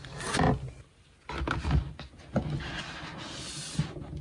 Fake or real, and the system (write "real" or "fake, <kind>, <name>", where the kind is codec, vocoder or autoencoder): real